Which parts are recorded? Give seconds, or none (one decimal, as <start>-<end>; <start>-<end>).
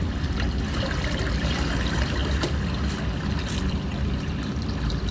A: none